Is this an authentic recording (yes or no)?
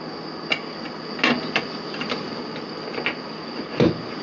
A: yes